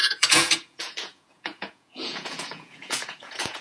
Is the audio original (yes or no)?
no